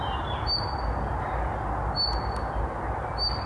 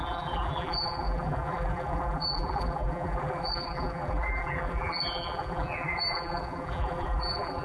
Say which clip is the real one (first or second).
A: first